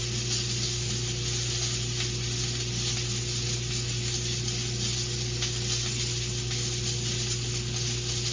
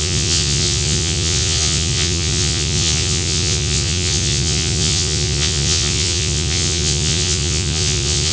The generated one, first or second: second